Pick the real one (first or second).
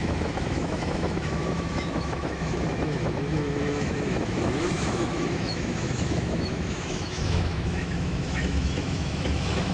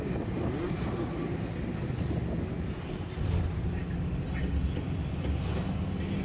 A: second